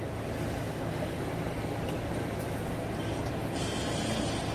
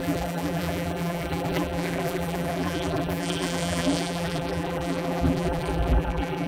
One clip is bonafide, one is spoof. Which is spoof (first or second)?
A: second